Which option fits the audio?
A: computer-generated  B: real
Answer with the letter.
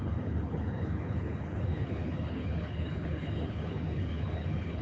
A